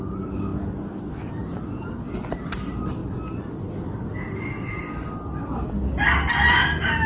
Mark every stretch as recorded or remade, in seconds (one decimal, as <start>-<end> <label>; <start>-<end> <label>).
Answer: 0.0-7.1 recorded